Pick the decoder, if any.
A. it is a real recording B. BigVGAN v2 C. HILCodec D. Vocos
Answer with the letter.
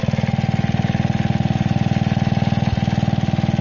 A